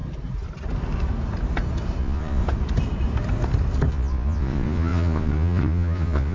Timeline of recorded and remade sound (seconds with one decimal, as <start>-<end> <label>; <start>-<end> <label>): 0.0-2.0 recorded; 2.0-2.4 remade; 2.4-3.9 recorded; 3.9-6.3 remade